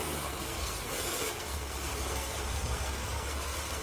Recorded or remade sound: remade